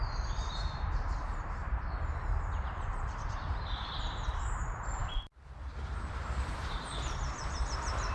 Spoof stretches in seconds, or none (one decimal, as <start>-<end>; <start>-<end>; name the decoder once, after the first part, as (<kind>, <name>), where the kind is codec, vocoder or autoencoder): 0.0-1.6 (vocoder, BigVGAN v2); 2.3-5.0; 6.5-8.1